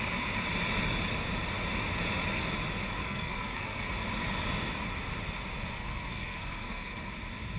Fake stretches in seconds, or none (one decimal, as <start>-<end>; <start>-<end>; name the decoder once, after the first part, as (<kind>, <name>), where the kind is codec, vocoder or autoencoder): 3.0-3.9 (codec, SNAC); 5.8-7.1